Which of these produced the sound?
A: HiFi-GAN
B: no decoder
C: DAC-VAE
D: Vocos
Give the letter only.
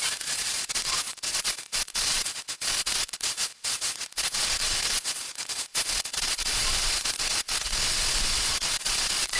D